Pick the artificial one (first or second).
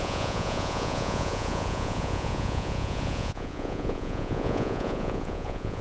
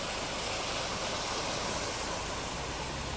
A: first